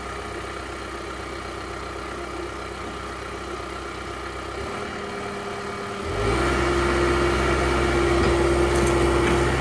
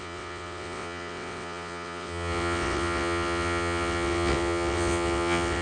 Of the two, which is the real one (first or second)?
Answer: first